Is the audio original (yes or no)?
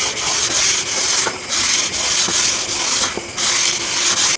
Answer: yes